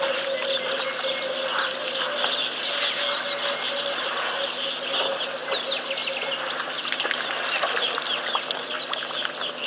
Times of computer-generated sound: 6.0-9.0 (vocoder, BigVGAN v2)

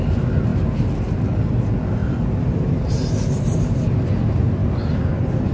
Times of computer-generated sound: 4.6-5.5 (vocoder, BigVGAN v2)